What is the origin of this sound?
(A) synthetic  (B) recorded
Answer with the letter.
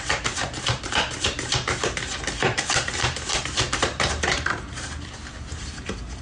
A